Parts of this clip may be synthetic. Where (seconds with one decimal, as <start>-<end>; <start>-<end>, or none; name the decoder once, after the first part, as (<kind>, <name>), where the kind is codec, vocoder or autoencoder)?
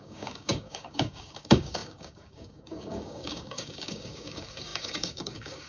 0.0-5.7 (codec, DAC)